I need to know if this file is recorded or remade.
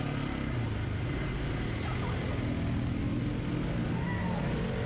recorded